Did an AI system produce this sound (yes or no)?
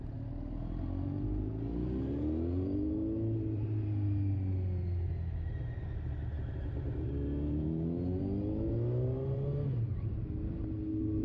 no